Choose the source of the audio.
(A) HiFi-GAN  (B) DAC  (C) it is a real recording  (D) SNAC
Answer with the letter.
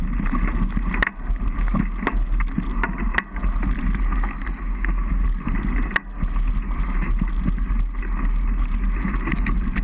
C